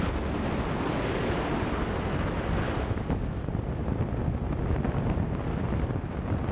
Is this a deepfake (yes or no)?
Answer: no